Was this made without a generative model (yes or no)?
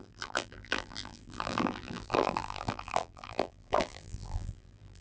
no